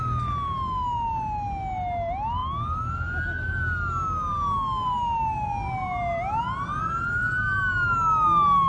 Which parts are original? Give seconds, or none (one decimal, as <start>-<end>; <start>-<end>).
0.0-8.7